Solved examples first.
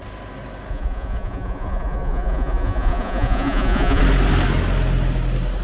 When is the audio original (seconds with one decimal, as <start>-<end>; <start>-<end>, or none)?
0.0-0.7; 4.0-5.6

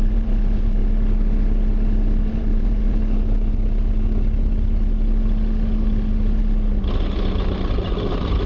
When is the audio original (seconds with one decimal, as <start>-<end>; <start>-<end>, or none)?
0.8-2.3; 3.0-8.0

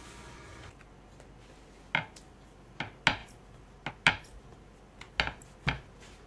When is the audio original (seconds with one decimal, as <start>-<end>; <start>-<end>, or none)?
0.0-6.3

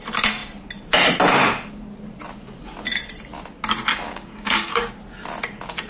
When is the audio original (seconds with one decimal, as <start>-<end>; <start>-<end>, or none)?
0.0-3.9; 4.9-5.9

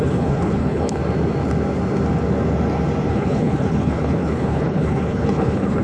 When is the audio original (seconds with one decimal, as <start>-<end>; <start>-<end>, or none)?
1.0-3.1